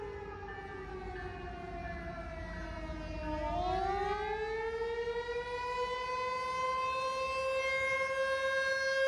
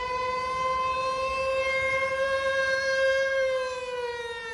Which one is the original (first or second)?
first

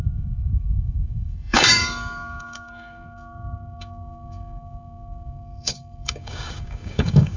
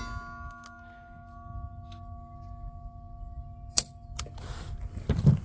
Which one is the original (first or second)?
second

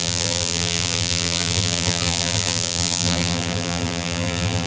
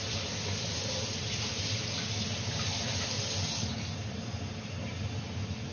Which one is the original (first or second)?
second